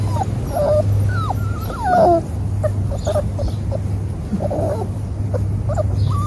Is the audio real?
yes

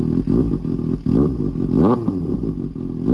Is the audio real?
yes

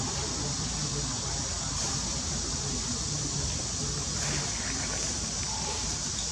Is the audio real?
yes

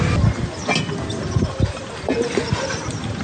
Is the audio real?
yes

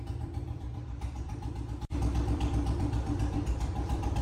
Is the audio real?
no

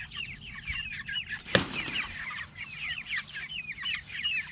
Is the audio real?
yes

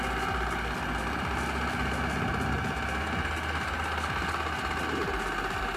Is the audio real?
yes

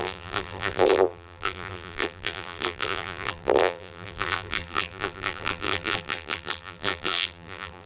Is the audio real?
no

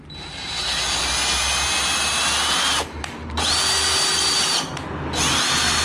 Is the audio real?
yes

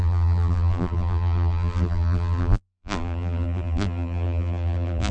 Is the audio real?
no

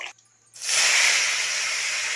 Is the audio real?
yes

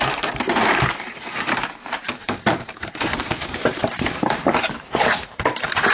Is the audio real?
no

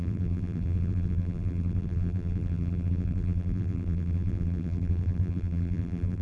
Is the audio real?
no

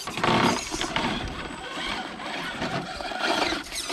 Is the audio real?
no